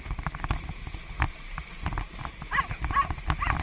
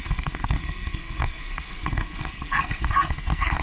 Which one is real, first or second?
first